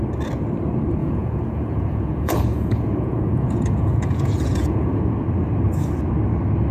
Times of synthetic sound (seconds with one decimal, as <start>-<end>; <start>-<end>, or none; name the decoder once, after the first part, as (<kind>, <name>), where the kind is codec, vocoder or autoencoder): 1.0-5.0 (vocoder, Vocos)